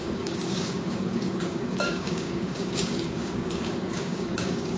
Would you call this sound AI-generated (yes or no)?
yes